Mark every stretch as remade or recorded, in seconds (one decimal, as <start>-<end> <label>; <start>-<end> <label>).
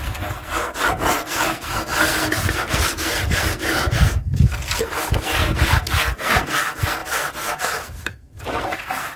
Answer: 0.0-9.2 remade